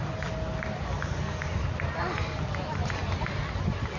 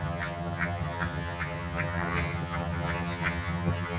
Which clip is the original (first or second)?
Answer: first